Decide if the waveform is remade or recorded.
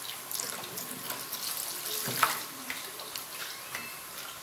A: recorded